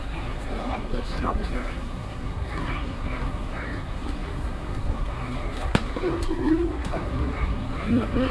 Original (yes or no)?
no